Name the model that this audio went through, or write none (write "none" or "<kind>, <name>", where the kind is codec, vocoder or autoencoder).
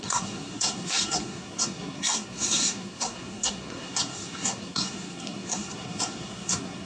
codec, SNAC